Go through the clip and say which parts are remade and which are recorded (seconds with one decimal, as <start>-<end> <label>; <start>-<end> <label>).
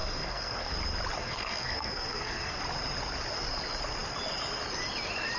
0.0-0.7 remade; 0.7-1.2 recorded; 1.2-2.6 remade; 2.6-5.4 recorded